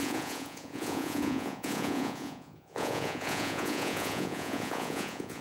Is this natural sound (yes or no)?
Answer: no